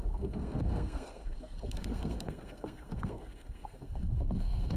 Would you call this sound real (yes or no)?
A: no